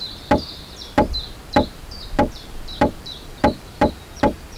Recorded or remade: remade